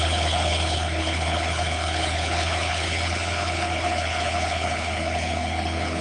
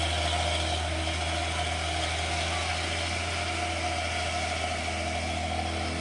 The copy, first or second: first